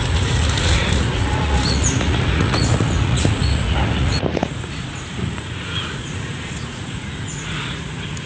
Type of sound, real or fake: fake